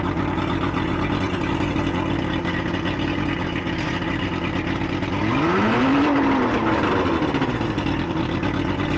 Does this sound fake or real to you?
real